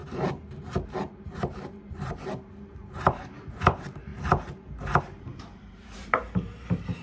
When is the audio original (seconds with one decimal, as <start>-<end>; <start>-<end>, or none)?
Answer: none